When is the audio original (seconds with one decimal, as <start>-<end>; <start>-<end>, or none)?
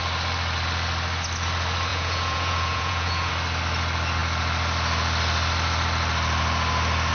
0.0-1.9; 3.3-7.1